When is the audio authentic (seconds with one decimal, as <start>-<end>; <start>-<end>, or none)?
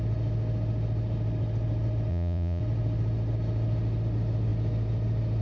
0.0-2.1; 2.6-5.4